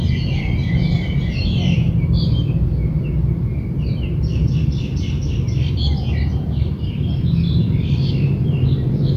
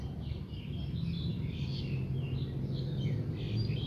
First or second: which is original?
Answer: second